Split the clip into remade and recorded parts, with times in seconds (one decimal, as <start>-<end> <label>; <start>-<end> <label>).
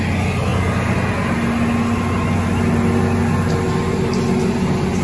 0.0-5.0 recorded